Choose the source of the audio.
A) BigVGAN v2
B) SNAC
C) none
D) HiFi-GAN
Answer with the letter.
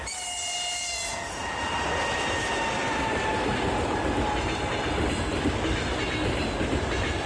C